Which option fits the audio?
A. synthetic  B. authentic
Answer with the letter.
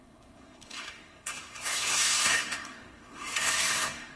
A